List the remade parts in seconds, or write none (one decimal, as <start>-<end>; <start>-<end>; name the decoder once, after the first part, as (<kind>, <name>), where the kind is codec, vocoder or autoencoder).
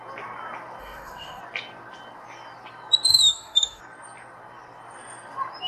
0.8-1.4 (autoencoder, DAC-VAE); 3.1-3.8